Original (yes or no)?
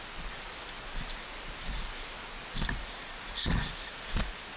yes